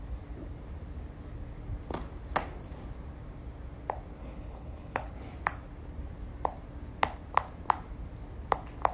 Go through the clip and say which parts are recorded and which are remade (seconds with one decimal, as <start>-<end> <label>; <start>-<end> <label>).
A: 0.0-4.2 recorded; 4.2-5.1 remade; 5.1-8.9 recorded